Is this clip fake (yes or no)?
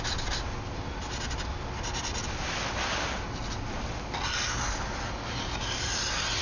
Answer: no